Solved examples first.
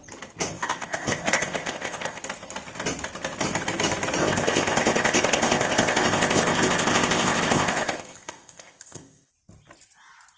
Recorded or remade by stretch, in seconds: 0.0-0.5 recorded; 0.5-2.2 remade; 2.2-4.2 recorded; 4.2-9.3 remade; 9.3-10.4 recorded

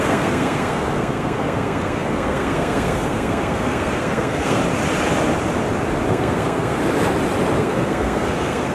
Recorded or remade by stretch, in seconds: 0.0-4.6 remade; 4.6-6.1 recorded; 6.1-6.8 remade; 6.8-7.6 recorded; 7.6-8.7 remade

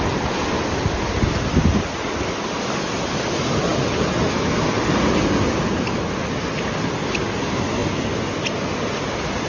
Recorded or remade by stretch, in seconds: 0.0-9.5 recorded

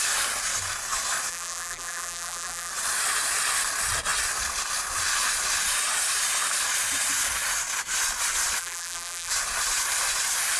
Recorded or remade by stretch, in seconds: 0.0-1.3 recorded; 1.3-2.7 remade; 2.7-8.6 recorded; 8.6-9.3 remade; 9.3-10.6 recorded

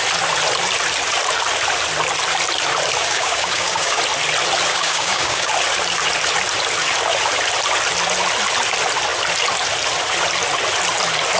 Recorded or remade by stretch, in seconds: 0.0-3.0 recorded; 3.0-4.0 remade; 4.0-4.7 recorded; 4.7-5.5 remade; 5.5-11.4 recorded